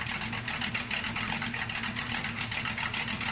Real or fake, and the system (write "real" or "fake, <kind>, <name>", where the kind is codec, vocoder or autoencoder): real